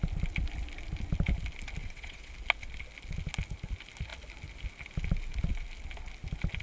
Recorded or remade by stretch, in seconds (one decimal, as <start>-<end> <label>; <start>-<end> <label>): 0.0-1.8 recorded; 1.8-2.3 remade; 2.3-6.6 recorded